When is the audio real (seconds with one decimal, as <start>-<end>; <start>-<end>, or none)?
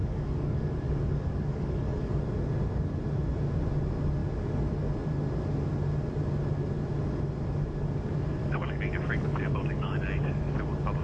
2.2-8.4; 10.6-11.0